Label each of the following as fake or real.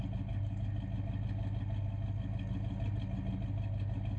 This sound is real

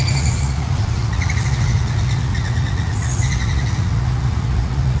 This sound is fake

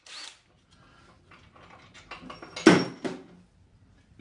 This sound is real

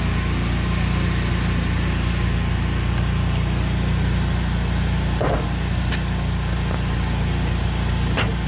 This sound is real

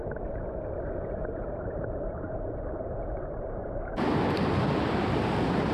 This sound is real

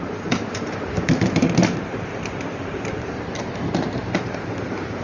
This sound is fake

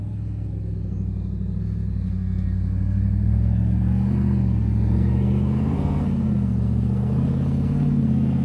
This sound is fake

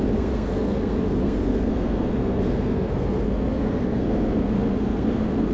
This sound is fake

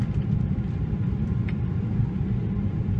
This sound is real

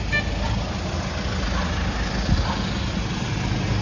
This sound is real